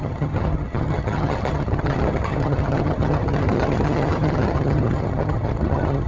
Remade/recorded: remade